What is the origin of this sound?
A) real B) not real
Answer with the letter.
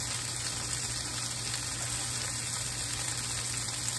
A